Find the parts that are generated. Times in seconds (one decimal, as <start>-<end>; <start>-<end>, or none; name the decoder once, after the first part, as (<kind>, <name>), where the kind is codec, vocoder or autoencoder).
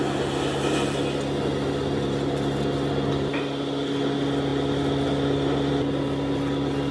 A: none